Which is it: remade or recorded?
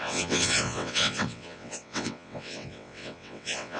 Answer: remade